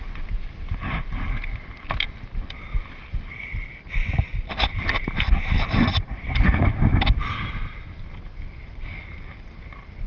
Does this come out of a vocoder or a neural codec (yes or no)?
no